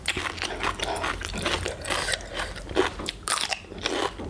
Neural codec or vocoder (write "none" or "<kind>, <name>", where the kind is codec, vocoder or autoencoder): none